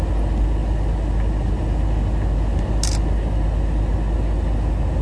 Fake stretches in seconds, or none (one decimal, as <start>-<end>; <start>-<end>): none